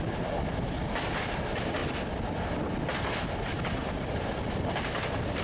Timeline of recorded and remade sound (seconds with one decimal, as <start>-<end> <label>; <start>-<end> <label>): 0.0-5.4 recorded